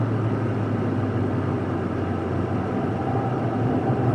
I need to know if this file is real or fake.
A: real